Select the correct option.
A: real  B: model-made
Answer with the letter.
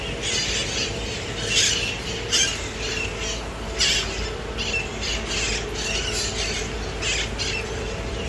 A